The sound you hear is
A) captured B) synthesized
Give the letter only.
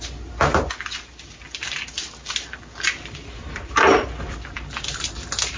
A